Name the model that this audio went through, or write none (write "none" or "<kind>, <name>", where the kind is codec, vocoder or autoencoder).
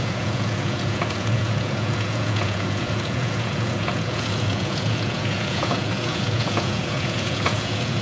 vocoder, Vocos